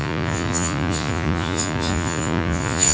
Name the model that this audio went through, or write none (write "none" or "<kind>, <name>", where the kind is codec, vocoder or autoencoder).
vocoder, Vocos